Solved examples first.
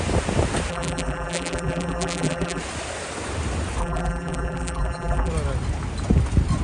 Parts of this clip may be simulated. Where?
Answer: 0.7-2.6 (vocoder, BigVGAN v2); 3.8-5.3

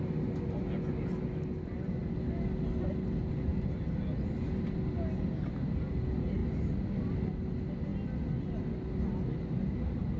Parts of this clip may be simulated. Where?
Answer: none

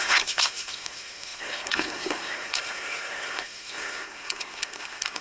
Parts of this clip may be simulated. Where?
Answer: 0.0-5.2 (codec, SNAC)

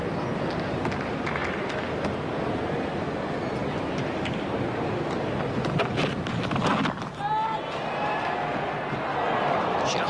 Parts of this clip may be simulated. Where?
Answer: none